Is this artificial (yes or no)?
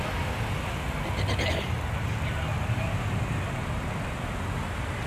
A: no